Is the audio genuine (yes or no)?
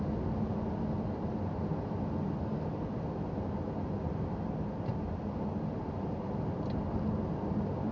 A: yes